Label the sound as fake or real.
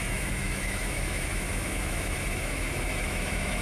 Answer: fake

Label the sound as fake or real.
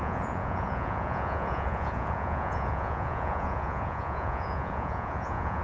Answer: fake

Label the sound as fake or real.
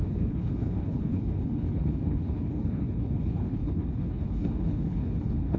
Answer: fake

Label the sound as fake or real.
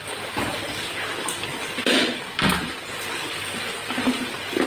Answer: real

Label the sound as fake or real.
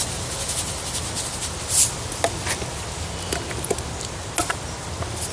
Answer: real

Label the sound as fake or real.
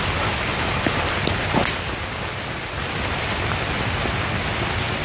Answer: real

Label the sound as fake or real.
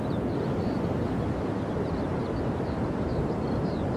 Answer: fake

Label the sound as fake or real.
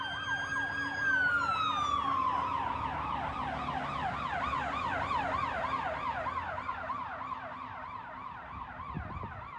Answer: real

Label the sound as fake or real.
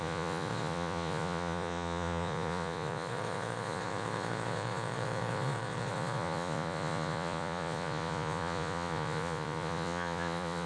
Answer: fake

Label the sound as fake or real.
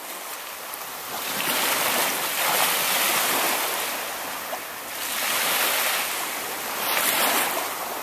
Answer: real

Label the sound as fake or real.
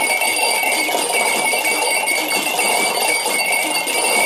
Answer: real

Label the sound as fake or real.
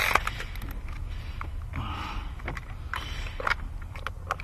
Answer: real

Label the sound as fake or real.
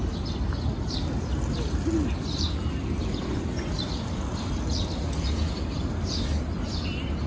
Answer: real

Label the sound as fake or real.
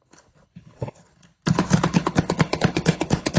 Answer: fake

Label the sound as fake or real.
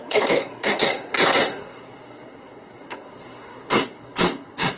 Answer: fake